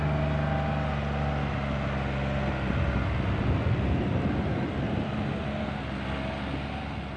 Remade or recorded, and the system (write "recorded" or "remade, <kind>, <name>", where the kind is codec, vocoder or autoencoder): recorded